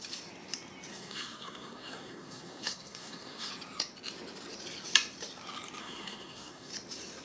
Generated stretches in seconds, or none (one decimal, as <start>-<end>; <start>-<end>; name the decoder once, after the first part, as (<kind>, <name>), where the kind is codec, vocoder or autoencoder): 0.9-3.5 (codec, SNAC); 5.8-6.7